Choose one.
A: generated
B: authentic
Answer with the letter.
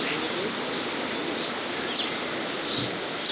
B